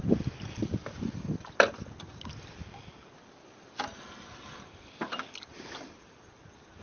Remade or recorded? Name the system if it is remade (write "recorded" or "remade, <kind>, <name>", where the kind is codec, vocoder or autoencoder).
recorded